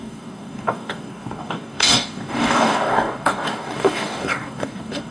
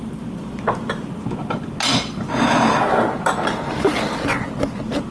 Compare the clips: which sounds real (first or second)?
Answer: second